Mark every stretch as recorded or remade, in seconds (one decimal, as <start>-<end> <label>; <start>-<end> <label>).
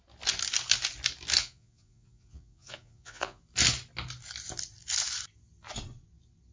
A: 0.0-1.4 recorded; 1.4-3.4 remade; 3.4-6.5 recorded